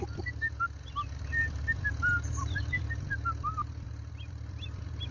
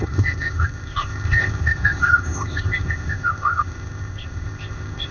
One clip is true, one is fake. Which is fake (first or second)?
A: second